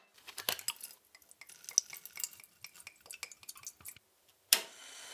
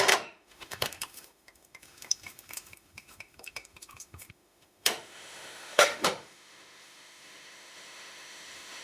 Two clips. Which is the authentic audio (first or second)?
first